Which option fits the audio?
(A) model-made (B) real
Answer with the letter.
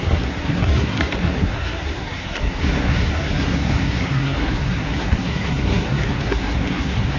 A